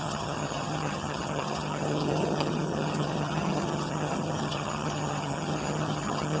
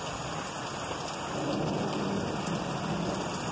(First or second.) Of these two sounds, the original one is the second